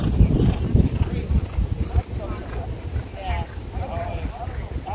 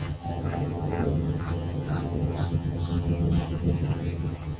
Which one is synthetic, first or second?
second